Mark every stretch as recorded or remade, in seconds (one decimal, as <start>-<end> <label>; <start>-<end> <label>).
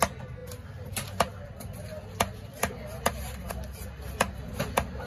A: 0.0-5.1 recorded